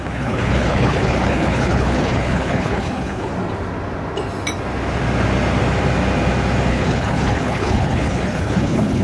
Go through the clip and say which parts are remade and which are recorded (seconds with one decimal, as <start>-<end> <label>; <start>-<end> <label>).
0.0-3.3 remade; 3.3-6.7 recorded; 6.7-9.0 remade